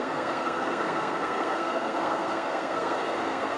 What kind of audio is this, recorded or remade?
remade